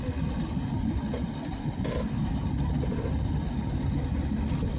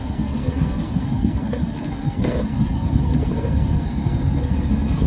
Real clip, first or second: first